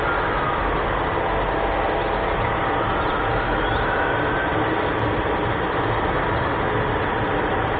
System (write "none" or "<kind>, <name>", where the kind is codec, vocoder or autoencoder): none